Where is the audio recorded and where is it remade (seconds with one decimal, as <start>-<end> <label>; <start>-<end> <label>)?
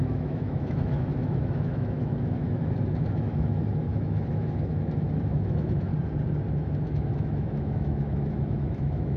0.0-5.9 remade; 5.9-6.5 recorded; 6.5-9.2 remade